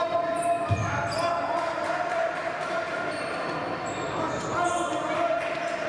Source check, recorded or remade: recorded